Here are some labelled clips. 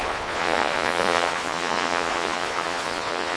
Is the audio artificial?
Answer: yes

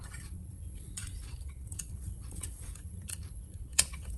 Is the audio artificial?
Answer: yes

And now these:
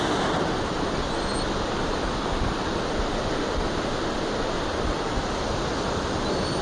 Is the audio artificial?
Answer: no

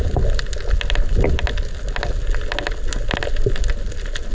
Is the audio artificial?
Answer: no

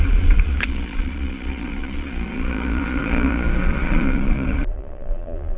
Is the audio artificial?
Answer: yes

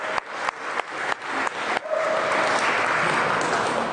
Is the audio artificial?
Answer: no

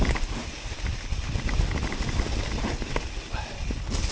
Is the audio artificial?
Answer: no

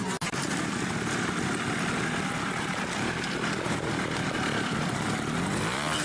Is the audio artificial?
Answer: no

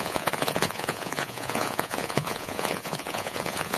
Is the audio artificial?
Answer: yes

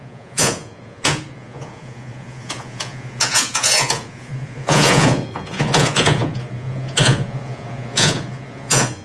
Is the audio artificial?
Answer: yes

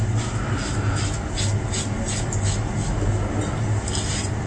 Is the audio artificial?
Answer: no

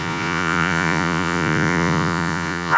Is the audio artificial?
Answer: yes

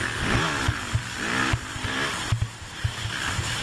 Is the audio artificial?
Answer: no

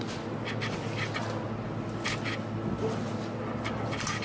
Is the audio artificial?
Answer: no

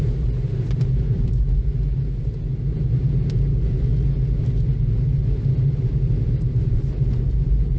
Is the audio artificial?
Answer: no